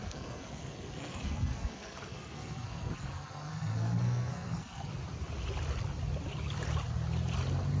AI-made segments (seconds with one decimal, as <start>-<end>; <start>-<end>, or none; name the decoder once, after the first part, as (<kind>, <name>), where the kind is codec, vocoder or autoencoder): 0.0-4.9 (codec, SNAC)

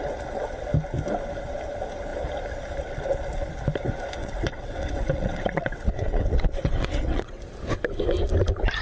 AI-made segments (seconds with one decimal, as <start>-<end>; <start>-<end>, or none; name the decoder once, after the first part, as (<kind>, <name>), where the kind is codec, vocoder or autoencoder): 4.2-7.4 (vocoder, WaveNeXt)

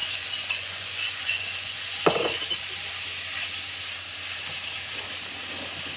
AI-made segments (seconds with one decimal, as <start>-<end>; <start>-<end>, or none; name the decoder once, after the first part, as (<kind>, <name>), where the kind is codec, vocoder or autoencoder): 0.0-2.4 (vocoder, Vocos)

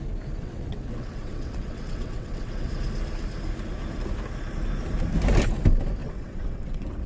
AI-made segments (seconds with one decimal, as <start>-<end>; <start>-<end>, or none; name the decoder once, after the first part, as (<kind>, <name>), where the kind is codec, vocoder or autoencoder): 0.4-2.7 (vocoder, WaveNeXt); 6.0-7.1

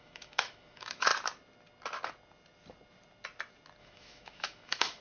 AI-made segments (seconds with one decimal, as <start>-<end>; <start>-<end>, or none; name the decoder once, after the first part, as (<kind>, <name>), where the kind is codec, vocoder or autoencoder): 0.0-1.1 (autoencoder, DAC-VAE); 3.8-5.0